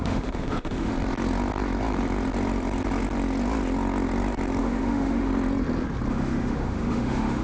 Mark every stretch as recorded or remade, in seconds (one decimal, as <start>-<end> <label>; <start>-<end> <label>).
0.0-0.9 remade; 0.9-4.6 recorded; 4.6-5.3 remade; 5.3-6.1 recorded; 6.1-7.4 remade